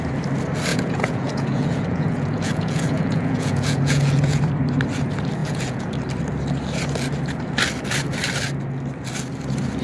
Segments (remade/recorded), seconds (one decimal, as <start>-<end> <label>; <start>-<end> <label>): 0.0-0.7 recorded; 0.7-4.4 remade; 4.4-5.4 recorded; 5.4-5.9 remade; 5.9-9.8 recorded